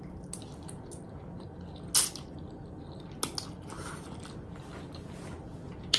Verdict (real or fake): real